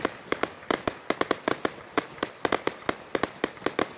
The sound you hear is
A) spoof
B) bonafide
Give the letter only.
B